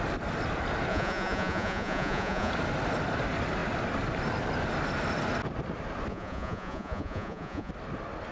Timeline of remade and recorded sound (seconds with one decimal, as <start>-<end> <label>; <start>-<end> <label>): 0.0-0.9 recorded; 0.9-2.5 remade; 2.5-6.1 recorded; 6.1-7.7 remade; 7.7-8.3 recorded